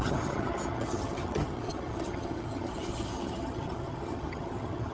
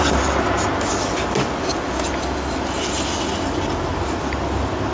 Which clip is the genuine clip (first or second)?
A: second